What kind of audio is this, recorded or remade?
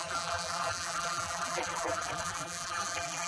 remade